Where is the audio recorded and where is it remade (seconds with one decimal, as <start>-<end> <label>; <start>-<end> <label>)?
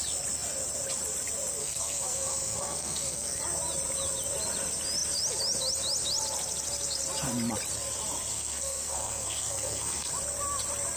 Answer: 0.0-1.6 recorded; 1.6-3.4 remade; 3.4-8.3 recorded; 8.3-10.1 remade; 10.1-11.0 recorded